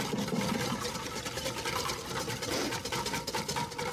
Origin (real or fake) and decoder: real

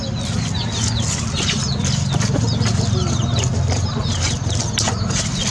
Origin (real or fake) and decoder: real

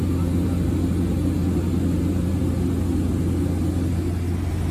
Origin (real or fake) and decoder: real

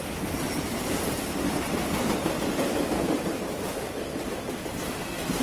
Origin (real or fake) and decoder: real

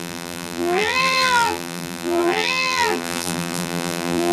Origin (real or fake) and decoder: fake, vocoder, BigVGAN v2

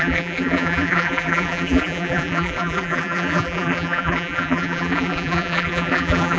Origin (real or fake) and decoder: fake, vocoder, BigVGAN v2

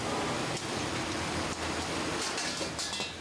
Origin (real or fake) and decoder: real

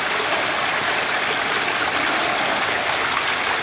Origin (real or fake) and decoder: real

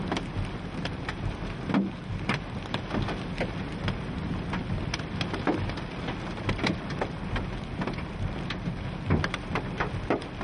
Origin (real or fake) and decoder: real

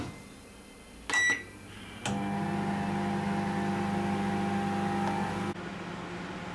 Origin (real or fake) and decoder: real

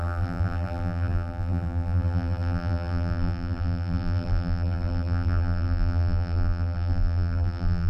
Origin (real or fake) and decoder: fake, vocoder, BigVGAN v2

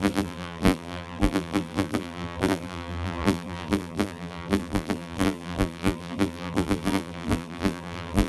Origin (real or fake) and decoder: fake, vocoder, BigVGAN v2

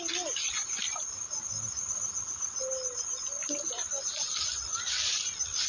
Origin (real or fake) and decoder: fake, vocoder, BigVGAN v2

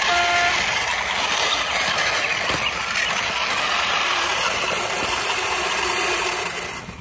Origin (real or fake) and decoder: real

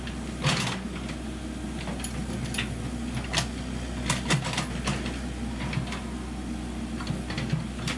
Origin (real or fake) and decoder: real